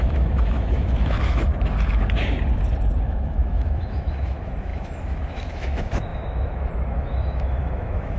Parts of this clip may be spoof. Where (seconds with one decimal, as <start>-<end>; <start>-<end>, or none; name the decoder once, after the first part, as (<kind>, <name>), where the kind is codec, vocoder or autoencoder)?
0.0-1.5 (autoencoder, DAC-VAE); 3.0-8.2